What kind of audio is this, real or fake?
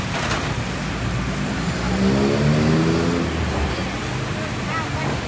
real